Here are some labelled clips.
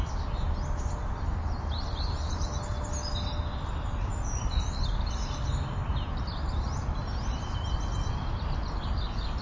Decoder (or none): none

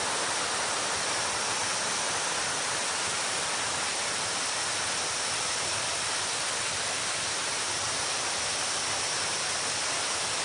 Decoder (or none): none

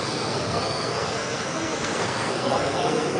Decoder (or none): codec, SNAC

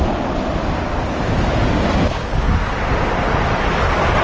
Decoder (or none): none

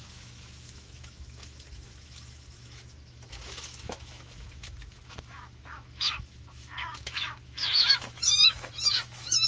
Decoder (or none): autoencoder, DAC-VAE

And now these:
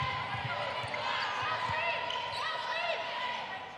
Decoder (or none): none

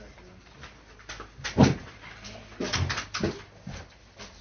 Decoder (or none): none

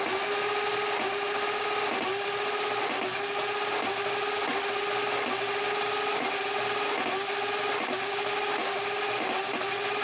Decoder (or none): none